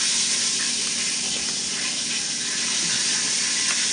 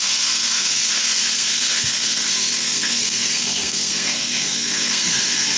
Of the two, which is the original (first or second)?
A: first